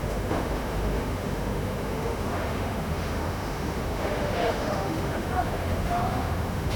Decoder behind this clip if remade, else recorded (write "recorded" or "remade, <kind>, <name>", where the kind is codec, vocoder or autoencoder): remade, autoencoder, DAC-VAE